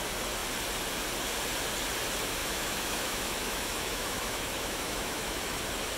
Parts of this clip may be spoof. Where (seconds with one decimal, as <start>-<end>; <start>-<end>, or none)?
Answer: 2.4-5.6